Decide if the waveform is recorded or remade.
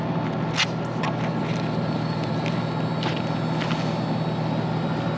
recorded